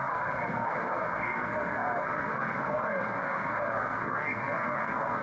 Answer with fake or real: fake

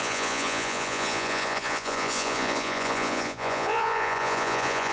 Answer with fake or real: fake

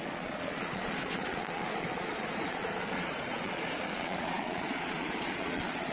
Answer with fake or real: fake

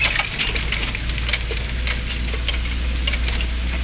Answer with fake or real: real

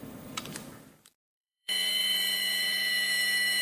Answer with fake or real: fake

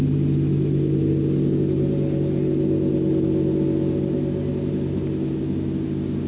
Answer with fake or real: real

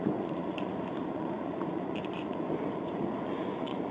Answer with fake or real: fake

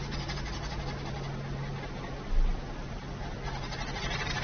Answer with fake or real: real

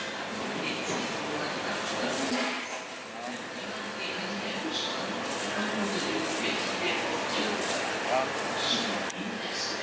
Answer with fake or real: real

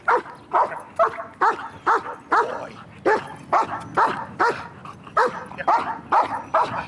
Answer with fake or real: real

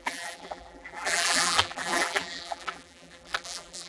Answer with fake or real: fake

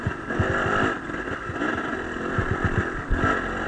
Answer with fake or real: real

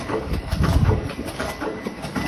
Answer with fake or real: fake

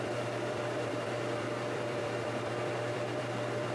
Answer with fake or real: fake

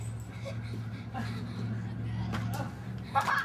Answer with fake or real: real